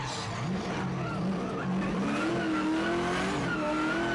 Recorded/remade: recorded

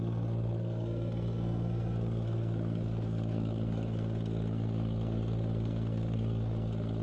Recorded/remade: remade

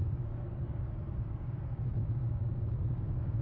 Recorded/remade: remade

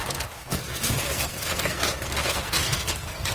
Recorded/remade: remade